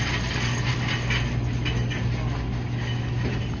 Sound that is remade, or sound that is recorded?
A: recorded